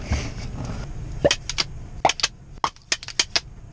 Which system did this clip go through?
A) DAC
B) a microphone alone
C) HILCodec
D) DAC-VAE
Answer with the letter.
B